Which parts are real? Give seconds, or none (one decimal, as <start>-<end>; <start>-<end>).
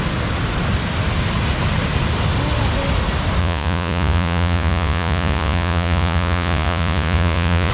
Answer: 0.0-3.4